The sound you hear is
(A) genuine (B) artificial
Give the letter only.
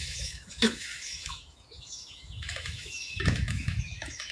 B